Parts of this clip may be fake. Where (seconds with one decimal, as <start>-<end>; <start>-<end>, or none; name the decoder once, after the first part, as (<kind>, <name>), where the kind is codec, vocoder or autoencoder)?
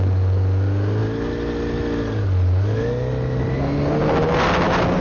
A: none